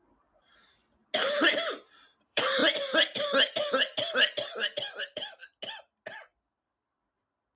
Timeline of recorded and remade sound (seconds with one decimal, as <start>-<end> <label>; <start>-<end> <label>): 0.0-1.0 remade; 1.0-1.6 recorded; 1.6-2.6 remade; 2.6-5.0 recorded; 5.0-5.4 remade; 5.4-6.4 recorded; 6.4-7.6 remade